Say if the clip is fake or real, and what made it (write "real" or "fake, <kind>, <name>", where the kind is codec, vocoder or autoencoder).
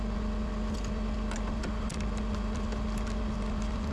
real